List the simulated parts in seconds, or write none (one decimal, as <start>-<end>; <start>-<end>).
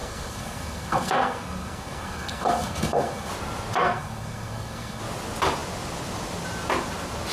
0.0-3.3; 3.8-5.0